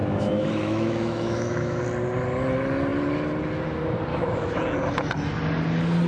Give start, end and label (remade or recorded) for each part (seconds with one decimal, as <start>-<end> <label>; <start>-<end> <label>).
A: 0.0-1.8 remade; 1.8-4.1 recorded; 4.1-4.6 remade; 4.6-6.1 recorded